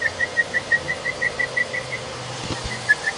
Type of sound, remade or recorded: recorded